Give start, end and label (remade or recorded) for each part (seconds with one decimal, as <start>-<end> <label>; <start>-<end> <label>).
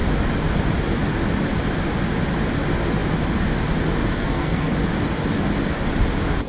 0.0-4.1 recorded; 4.1-4.7 remade; 4.7-6.5 recorded